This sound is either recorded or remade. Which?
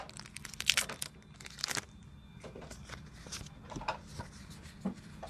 recorded